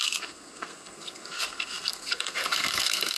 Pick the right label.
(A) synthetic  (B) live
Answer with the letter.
A